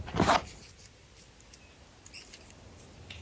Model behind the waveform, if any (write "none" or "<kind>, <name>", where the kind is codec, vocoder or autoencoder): none